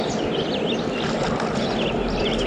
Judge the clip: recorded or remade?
recorded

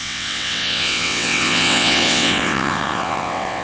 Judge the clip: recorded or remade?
remade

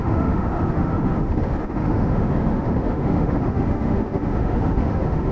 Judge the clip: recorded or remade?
remade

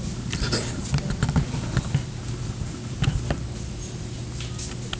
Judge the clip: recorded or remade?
recorded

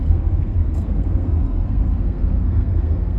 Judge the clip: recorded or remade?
remade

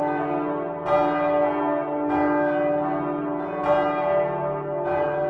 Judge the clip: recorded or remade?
recorded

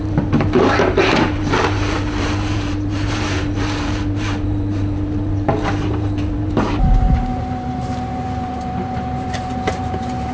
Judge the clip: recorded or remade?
remade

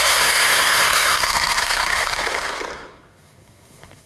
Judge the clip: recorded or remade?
remade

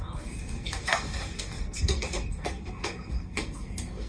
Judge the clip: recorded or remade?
remade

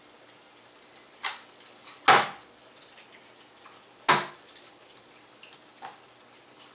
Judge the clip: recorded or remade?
recorded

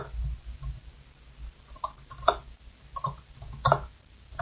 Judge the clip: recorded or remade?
recorded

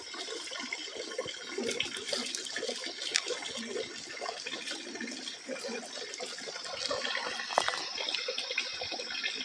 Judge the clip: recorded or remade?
recorded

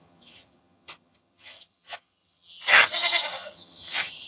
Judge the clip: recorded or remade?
remade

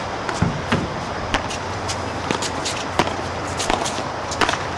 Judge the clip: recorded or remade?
recorded